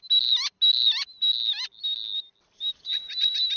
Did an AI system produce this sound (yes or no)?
no